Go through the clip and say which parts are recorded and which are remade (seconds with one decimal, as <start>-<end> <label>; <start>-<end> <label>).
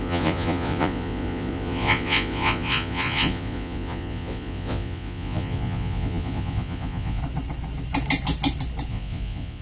0.0-7.2 remade; 7.2-8.9 recorded; 8.9-9.6 remade